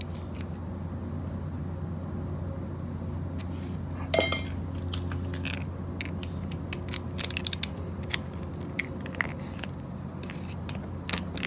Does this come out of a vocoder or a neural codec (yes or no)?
no